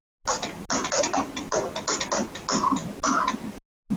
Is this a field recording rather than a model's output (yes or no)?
yes